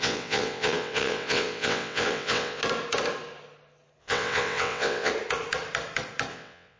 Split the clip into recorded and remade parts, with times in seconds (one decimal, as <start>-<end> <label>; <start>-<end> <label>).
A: 0.0-2.6 remade; 2.6-4.0 recorded; 4.0-5.1 remade; 5.1-6.3 recorded; 6.3-6.8 remade